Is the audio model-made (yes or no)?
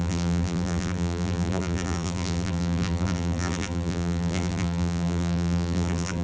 yes